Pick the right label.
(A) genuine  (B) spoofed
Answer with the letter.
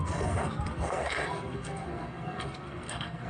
B